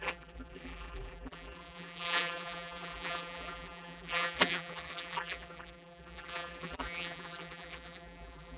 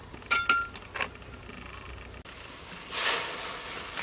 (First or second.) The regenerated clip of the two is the first